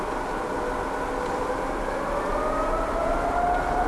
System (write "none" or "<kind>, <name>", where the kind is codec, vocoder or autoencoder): none